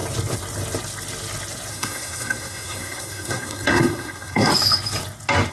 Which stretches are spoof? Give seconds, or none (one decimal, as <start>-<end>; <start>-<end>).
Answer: 1.7-4.5